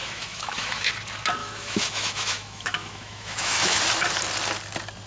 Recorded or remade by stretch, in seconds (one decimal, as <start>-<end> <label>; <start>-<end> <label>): 0.0-0.9 remade; 0.9-1.4 recorded; 1.4-3.8 remade; 3.8-5.1 recorded